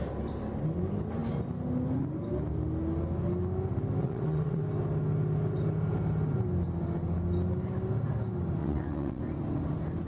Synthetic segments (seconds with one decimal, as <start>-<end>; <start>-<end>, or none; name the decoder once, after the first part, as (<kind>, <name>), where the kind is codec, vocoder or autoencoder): 4.0-4.6 (vocoder, WaveNeXt); 8.6-9.2